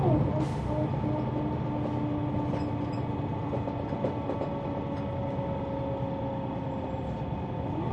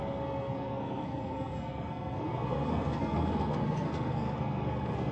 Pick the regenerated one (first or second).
second